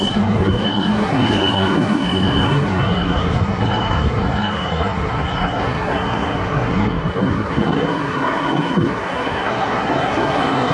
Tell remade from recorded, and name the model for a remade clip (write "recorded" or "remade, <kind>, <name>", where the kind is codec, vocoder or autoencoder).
remade, codec, SNAC